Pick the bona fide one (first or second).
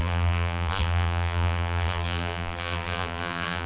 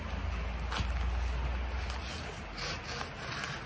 second